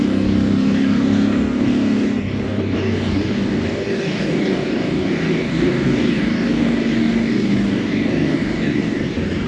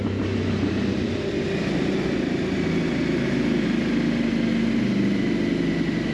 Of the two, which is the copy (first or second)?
first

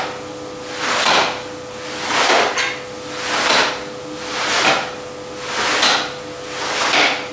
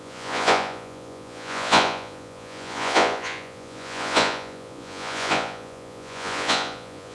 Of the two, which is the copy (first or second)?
second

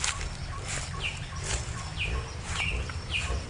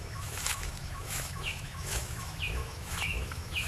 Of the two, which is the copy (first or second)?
second